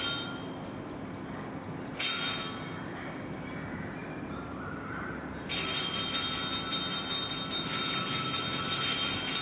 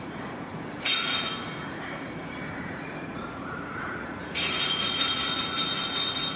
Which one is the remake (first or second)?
second